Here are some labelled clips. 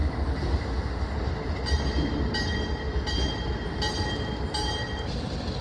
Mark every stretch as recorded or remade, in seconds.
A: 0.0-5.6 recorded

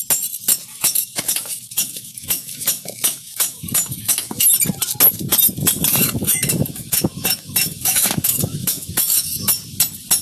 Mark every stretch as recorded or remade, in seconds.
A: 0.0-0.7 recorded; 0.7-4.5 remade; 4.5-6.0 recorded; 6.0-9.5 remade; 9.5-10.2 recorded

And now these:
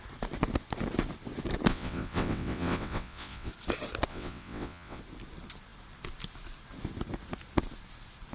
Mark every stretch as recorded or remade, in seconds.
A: 0.0-1.7 recorded; 1.7-3.5 remade; 3.5-4.1 recorded; 4.1-5.0 remade; 5.0-8.3 recorded

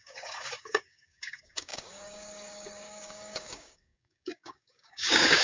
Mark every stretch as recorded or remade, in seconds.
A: 0.0-5.4 remade

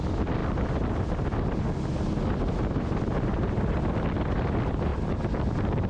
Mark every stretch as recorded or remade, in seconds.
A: 0.0-5.9 recorded